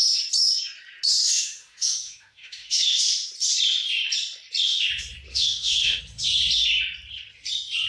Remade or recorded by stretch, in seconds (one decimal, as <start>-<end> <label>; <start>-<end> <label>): 0.0-1.2 recorded; 1.2-3.0 remade; 3.0-5.3 recorded; 5.3-6.0 remade; 6.0-7.9 recorded